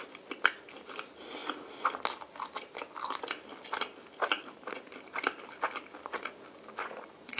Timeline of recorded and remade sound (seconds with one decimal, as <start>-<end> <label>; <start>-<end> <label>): 0.0-6.8 recorded; 6.8-7.4 remade